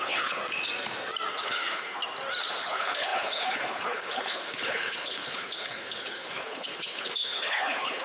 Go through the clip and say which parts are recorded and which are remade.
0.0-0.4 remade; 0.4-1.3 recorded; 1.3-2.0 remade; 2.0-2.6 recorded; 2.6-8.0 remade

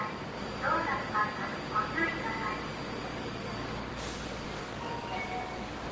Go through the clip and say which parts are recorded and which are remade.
0.0-3.0 recorded; 3.0-3.9 remade; 3.9-4.6 recorded; 4.6-5.9 remade